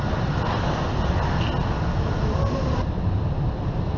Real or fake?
real